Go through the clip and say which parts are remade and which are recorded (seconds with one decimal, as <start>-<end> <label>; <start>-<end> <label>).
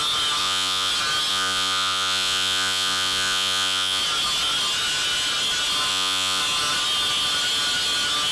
0.0-0.4 recorded; 0.4-0.9 remade; 0.9-1.3 recorded; 1.3-4.0 remade; 4.0-5.9 recorded; 5.9-6.4 remade; 6.4-8.3 recorded